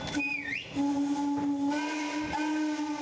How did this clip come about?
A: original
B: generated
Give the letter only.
A